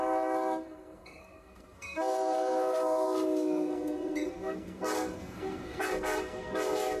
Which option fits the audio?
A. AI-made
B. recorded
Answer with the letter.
A